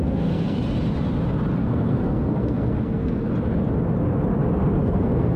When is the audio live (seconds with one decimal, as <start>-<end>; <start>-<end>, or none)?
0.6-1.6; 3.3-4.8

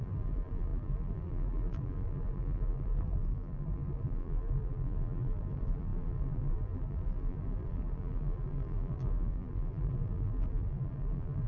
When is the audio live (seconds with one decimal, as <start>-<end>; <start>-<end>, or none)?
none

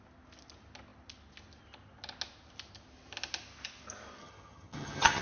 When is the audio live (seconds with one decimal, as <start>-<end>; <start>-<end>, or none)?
0.0-4.2

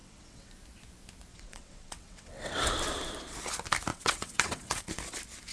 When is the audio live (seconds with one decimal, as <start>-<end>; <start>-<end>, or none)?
0.5-1.3; 2.7-3.9; 4.9-5.5